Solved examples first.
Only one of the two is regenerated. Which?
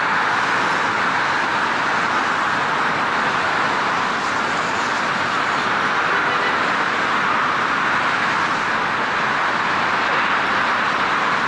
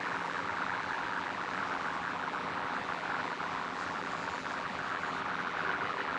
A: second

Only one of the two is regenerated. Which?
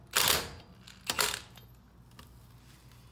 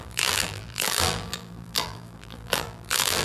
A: second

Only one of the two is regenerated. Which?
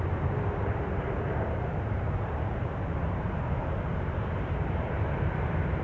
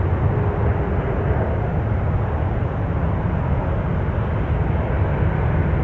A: first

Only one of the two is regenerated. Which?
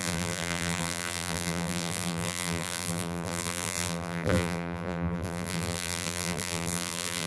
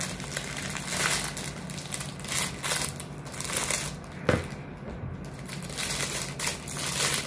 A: first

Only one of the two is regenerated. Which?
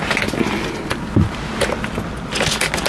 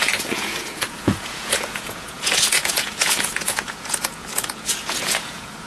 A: second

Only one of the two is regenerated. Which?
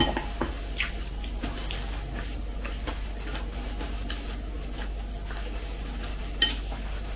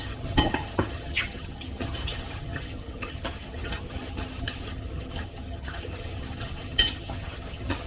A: second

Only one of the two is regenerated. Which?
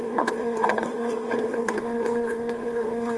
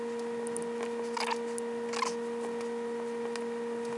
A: first